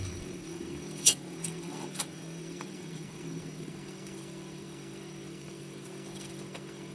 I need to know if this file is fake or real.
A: fake